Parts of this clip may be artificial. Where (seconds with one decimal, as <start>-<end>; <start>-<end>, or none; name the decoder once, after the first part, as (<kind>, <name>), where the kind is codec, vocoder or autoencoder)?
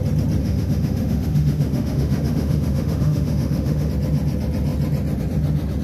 0.4-3.9 (autoencoder, DAC-VAE)